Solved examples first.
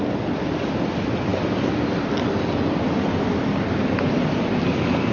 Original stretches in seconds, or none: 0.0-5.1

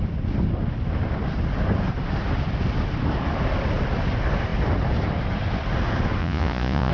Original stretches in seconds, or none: 0.0-6.2

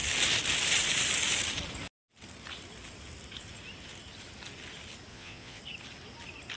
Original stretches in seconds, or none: 0.0-5.1; 5.6-6.6

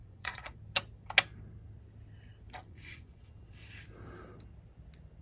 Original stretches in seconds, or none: 0.6-2.6; 3.3-5.2

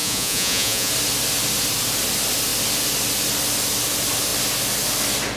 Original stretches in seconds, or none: 0.9-5.4

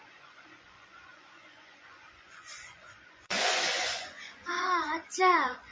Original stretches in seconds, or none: none